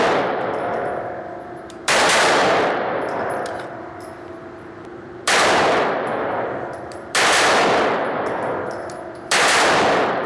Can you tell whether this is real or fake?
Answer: fake